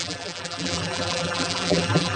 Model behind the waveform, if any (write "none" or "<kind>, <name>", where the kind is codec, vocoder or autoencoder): vocoder, BigVGAN v2